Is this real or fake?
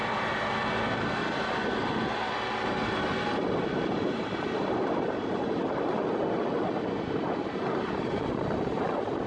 real